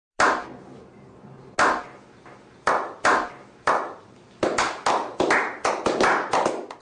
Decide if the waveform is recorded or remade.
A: recorded